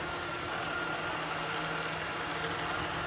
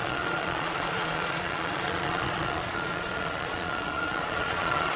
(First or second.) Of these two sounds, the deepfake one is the second